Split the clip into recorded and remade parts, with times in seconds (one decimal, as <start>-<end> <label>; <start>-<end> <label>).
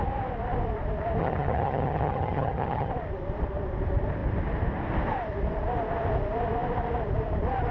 0.0-1.2 recorded; 1.2-2.9 remade; 2.9-7.7 recorded